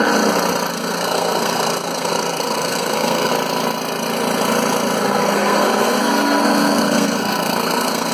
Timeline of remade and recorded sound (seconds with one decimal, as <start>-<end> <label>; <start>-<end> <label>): 0.0-0.7 recorded; 0.7-3.3 remade; 3.3-5.0 recorded; 5.0-8.1 remade

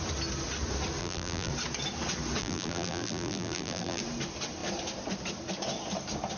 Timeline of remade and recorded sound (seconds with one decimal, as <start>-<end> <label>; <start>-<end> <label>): 0.0-1.0 recorded; 1.0-1.5 remade; 1.5-2.4 recorded; 2.4-4.0 remade; 4.0-6.4 recorded